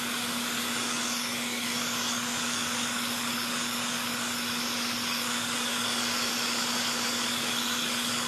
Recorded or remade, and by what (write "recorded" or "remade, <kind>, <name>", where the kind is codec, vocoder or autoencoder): remade, codec, DAC